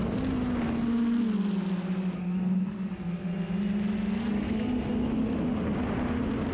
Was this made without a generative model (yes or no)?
yes